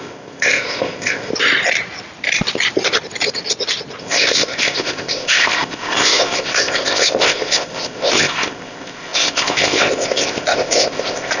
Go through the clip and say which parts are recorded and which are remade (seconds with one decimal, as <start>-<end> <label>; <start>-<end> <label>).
0.0-1.3 remade; 1.3-4.0 recorded; 4.0-11.4 remade